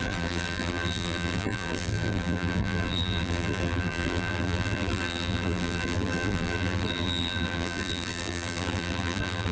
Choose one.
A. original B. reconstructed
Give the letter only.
B